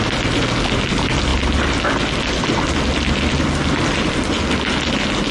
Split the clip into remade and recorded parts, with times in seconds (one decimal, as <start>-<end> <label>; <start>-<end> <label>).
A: 0.0-5.3 recorded